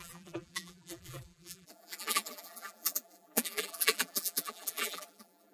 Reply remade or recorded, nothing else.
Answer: remade